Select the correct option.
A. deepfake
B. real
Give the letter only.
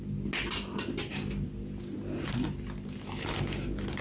B